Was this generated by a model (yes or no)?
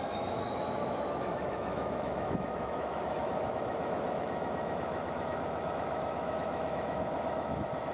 yes